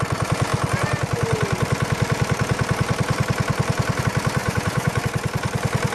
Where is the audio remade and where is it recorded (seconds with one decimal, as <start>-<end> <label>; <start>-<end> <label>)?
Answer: 0.0-4.4 recorded; 4.4-5.0 remade; 5.0-5.9 recorded